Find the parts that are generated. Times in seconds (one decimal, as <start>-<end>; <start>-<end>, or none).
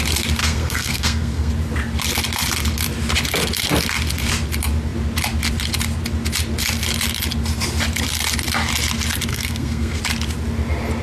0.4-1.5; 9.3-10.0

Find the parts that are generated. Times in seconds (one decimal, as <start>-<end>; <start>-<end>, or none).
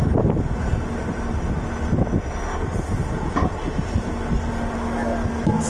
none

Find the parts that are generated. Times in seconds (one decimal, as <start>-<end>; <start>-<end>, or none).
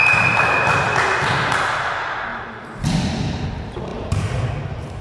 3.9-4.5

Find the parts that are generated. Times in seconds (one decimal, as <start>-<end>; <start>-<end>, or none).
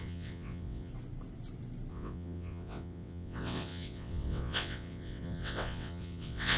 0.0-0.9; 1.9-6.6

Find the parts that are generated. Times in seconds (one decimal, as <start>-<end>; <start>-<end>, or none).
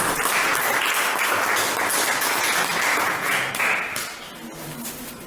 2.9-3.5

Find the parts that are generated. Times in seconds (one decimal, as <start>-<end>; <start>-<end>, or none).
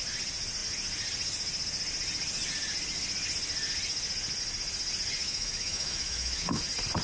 5.2-6.6